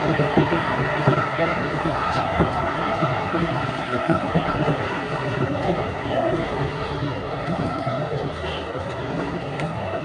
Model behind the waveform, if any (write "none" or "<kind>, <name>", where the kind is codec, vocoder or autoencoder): codec, SNAC